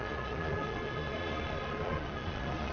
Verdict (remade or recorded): remade